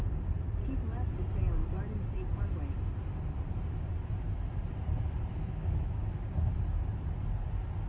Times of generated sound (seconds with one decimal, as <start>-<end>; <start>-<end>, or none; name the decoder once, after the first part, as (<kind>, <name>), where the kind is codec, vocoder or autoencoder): 5.3-6.2 (autoencoder, DAC-VAE)